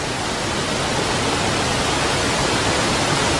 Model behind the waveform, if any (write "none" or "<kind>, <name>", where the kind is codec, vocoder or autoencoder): none